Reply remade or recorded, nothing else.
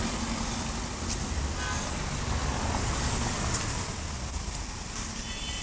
recorded